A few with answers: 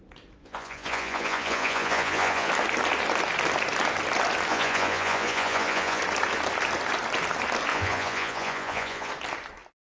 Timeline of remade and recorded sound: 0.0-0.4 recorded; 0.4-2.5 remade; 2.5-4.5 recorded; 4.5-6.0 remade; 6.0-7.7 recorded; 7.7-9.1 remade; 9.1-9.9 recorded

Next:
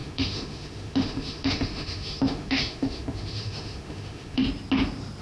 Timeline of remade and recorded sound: 0.0-4.4 remade; 4.4-5.2 recorded